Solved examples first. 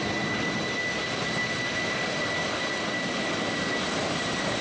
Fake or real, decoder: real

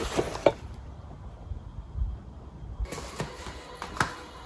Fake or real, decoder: real